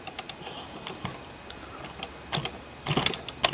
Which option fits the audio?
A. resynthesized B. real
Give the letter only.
B